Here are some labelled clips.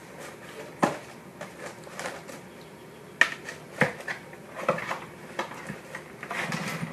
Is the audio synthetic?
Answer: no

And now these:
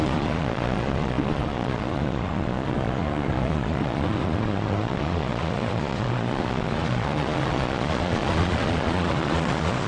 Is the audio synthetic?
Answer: yes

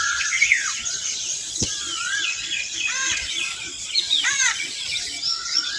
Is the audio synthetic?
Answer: yes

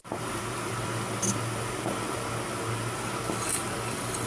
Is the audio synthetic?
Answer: no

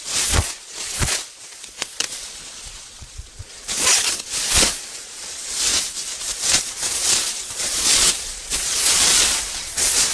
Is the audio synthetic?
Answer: yes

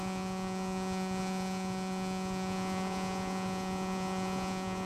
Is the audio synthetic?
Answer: yes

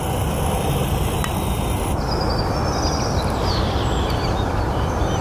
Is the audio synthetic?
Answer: no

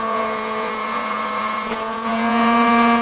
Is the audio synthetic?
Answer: yes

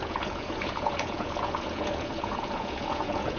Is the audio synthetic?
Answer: yes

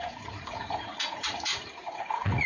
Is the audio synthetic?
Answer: yes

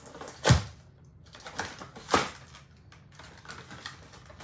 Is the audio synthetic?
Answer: no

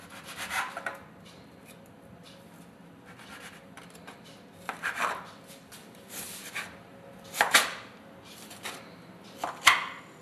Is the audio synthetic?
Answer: no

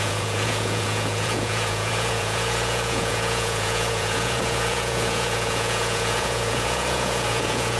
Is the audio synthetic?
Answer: yes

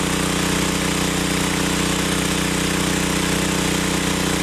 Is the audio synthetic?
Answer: no